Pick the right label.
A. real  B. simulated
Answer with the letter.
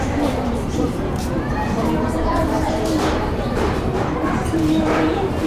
B